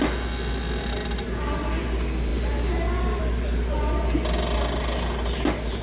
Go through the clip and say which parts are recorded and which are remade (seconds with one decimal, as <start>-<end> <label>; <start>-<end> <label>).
0.0-5.8 recorded